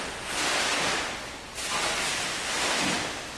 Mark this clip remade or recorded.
recorded